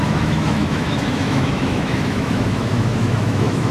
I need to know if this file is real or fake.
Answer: fake